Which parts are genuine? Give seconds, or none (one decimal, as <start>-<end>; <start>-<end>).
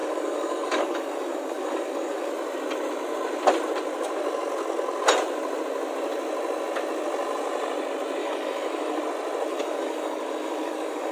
2.3-8.2; 9.0-9.5